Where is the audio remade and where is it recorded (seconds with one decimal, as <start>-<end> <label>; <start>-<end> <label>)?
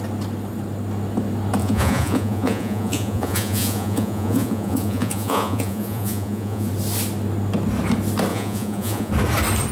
0.0-1.6 recorded; 1.6-6.7 remade; 6.7-8.3 recorded; 8.3-9.1 remade; 9.1-9.7 recorded